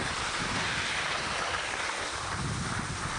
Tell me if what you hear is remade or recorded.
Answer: recorded